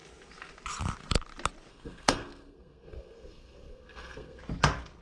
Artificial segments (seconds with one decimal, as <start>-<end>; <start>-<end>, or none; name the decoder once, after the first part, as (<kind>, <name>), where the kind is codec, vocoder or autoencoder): 1.7-4.4 (codec, SNAC)